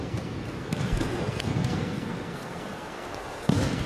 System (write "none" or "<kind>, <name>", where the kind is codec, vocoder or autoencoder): codec, SNAC